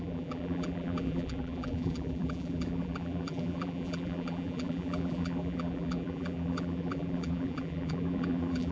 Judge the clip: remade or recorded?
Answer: remade